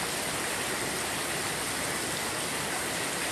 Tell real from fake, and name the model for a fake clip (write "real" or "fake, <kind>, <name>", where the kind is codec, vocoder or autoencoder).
real